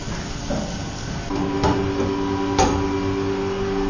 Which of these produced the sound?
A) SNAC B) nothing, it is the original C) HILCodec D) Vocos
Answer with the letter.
B